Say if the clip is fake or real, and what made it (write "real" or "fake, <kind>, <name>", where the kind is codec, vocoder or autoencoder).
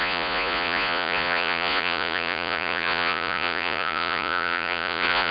fake, vocoder, Vocos